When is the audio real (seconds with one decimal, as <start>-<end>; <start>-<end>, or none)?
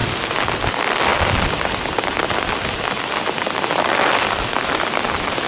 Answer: 0.0-5.5